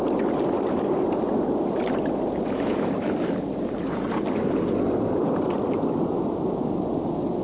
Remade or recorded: recorded